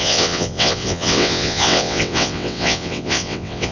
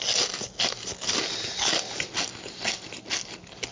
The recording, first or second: second